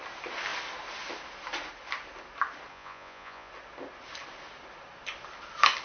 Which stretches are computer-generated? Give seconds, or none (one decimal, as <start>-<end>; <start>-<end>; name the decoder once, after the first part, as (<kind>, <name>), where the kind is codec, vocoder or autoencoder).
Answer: 2.7-3.5 (vocoder, Vocos)